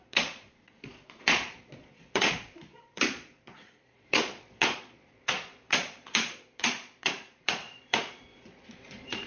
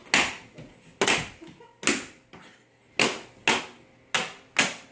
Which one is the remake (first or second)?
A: first